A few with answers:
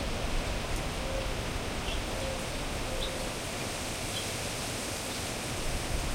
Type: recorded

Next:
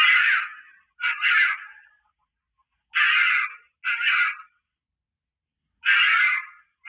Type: recorded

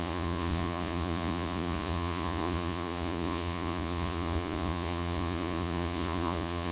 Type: remade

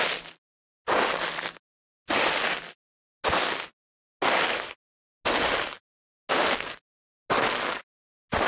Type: recorded